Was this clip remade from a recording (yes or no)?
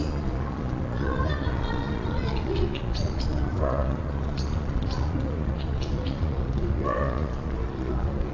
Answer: yes